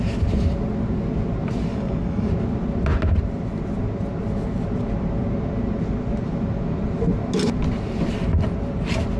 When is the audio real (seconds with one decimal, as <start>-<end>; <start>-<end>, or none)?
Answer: 0.0-1.7; 2.3-9.2